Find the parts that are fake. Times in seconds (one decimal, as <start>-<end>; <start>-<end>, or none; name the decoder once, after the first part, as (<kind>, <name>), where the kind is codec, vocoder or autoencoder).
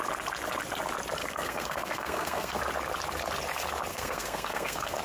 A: 1.2-2.6 (codec, SNAC); 3.9-5.0